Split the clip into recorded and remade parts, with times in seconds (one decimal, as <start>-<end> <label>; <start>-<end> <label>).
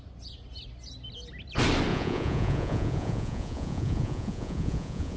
0.0-1.9 recorded; 1.9-5.2 remade